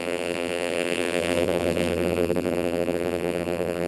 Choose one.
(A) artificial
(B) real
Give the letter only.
A